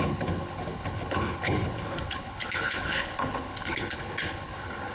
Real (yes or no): no